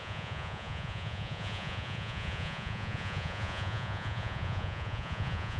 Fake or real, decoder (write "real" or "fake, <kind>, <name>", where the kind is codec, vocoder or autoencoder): fake, vocoder, Vocos